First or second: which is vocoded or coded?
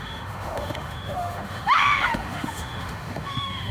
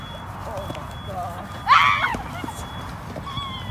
first